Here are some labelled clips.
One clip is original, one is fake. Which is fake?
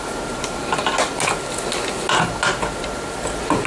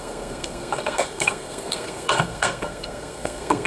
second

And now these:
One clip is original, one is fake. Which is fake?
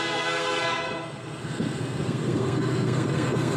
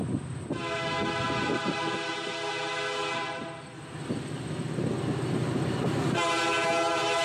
first